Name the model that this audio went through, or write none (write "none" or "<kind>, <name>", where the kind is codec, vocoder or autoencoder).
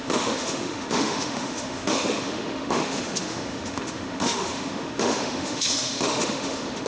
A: autoencoder, DAC-VAE